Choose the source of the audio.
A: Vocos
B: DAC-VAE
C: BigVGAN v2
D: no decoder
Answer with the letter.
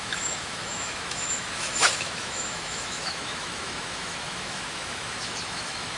B